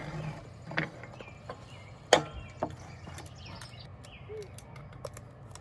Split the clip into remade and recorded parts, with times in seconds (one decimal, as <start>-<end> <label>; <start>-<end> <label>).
0.0-5.6 recorded